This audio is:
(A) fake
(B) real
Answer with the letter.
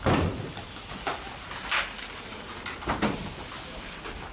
B